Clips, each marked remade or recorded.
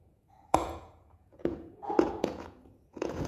remade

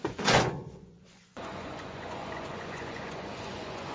remade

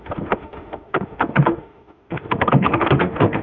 remade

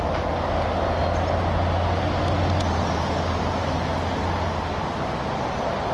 recorded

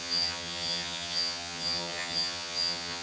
remade